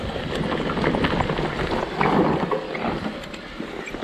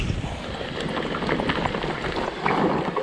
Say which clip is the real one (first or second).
first